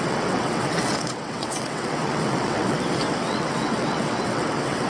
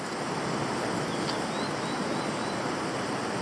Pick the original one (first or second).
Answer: second